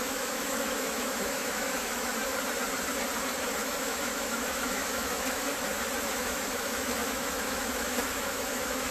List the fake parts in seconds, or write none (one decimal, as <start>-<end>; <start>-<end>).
0.0-2.1; 3.5-5.5; 6.1-8.9